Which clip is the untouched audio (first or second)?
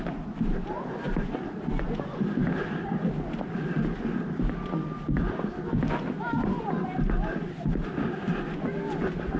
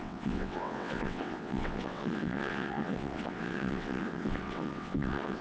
first